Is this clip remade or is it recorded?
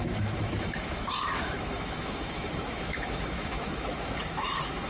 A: remade